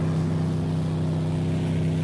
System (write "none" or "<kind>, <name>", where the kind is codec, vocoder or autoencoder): none